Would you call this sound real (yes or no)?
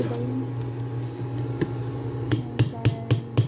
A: yes